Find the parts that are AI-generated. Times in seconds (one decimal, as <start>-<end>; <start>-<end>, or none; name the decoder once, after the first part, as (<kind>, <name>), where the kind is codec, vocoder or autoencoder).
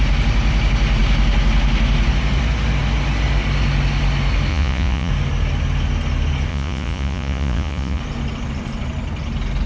4.5-5.1 (vocoder, Vocos); 6.5-8.0